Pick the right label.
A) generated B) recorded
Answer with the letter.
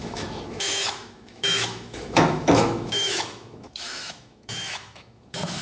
A